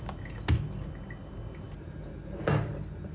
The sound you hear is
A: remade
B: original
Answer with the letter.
B